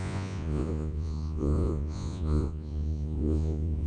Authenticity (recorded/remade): remade